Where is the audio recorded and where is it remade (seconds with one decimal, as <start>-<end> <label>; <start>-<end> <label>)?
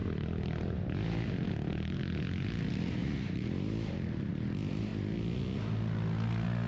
0.0-6.7 recorded